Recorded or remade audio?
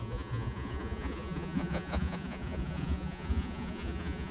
remade